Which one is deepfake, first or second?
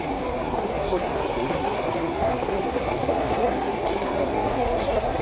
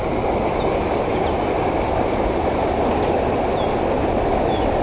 first